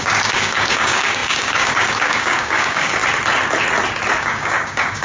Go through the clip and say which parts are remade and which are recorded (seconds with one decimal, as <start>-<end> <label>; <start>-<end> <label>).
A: 0.0-3.0 remade; 3.0-4.2 recorded; 4.2-5.0 remade